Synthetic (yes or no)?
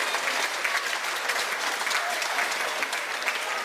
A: no